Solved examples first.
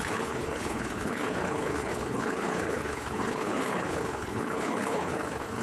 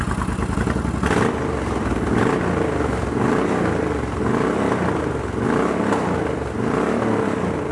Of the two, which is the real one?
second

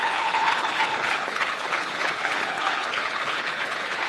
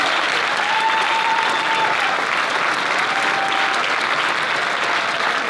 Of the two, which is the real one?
second